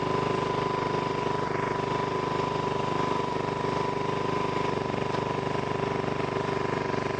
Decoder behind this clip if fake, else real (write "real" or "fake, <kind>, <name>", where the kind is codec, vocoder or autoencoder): real